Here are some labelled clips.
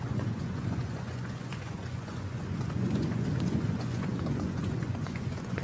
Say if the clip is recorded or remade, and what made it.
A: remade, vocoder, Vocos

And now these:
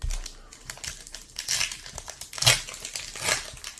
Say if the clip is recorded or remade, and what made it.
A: recorded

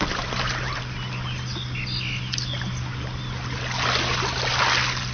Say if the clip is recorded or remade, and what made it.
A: recorded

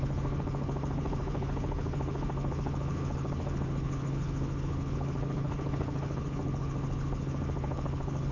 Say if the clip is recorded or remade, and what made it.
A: remade, codec, HILCodec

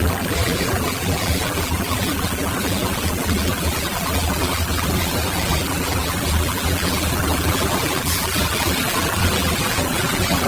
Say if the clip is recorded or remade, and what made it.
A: remade, vocoder, BigVGAN v2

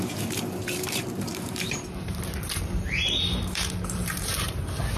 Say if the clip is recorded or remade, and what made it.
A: remade, vocoder, BigVGAN v2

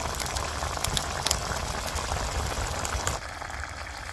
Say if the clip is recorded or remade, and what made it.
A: recorded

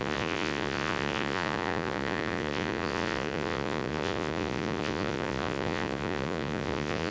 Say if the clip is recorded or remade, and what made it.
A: remade, vocoder, Vocos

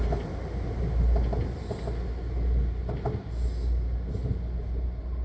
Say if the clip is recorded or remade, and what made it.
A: recorded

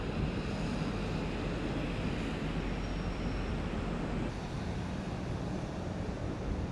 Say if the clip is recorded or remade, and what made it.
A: recorded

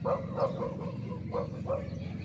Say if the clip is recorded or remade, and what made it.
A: remade, vocoder, BigVGAN v2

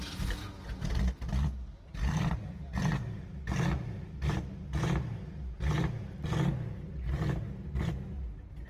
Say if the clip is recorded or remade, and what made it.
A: recorded